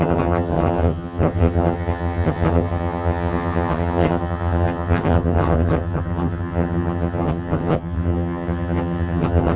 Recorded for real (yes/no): no